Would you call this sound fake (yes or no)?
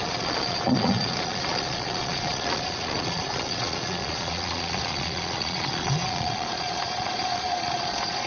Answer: yes